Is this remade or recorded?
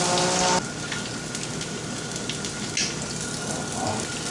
recorded